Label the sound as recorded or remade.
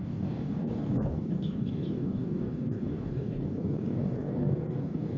remade